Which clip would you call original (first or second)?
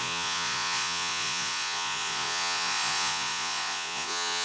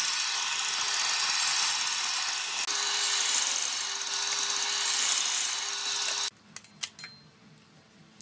second